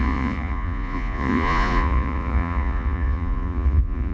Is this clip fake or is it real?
fake